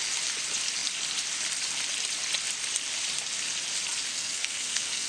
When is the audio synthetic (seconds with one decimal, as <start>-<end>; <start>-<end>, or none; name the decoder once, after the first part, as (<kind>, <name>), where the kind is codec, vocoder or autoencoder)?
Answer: 4.1-5.1 (codec, SNAC)